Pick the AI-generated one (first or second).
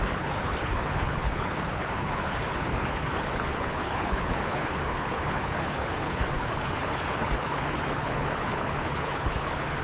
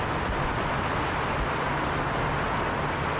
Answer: first